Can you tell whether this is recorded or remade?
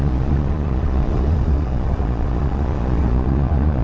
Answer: remade